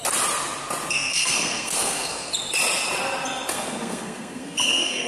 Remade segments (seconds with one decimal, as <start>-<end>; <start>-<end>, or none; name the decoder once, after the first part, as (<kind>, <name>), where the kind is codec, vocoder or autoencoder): 0.9-2.3 (codec, SNAC); 3.5-5.1